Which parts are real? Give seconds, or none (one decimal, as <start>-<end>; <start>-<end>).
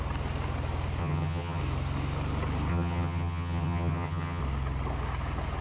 0.0-1.0; 1.6-2.7; 4.4-5.6